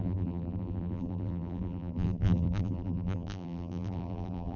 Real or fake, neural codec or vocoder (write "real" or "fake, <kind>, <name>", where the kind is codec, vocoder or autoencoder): fake, vocoder, BigVGAN v2